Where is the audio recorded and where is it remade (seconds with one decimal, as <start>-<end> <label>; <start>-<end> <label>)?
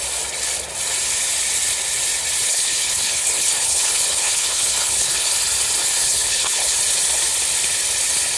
0.0-2.4 recorded; 2.4-5.3 remade; 5.3-5.8 recorded; 5.8-6.8 remade; 6.8-8.4 recorded